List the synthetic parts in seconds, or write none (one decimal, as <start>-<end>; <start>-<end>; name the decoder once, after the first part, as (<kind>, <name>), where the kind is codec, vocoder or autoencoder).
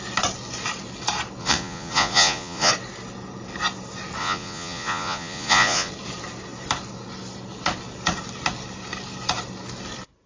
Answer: 1.4-2.7 (vocoder, Vocos); 4.2-5.9